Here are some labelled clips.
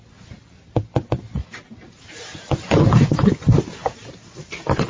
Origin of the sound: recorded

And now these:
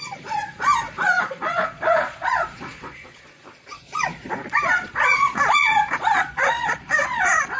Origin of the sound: remade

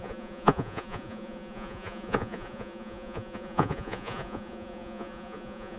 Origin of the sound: remade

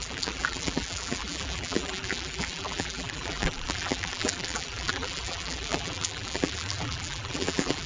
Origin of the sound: remade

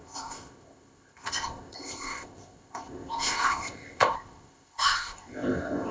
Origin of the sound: remade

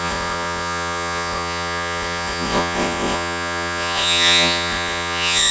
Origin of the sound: remade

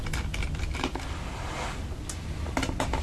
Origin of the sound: recorded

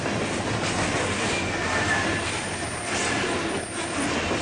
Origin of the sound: recorded